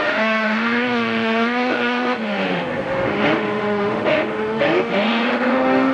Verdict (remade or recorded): remade